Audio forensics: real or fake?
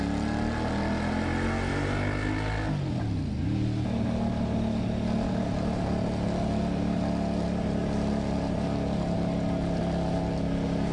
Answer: real